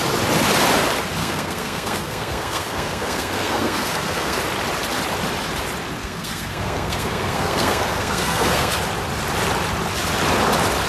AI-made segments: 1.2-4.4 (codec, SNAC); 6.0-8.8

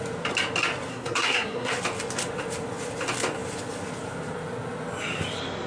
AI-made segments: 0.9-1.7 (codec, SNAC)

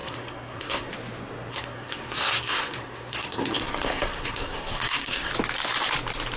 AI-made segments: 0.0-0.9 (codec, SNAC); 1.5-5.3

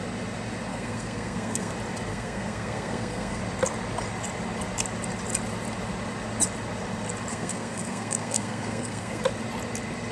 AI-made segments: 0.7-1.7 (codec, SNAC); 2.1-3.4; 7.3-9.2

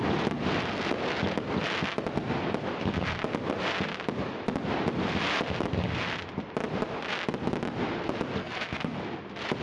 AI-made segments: 8.4-9.0 (codec, SNAC)